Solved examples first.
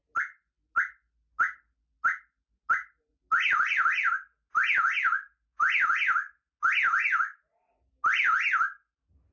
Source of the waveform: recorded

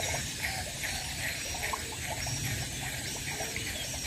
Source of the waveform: remade